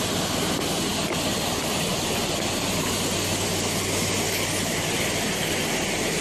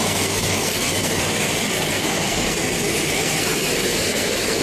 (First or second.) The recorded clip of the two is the first